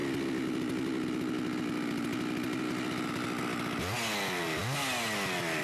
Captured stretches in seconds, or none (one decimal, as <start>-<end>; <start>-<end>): 0.0-5.6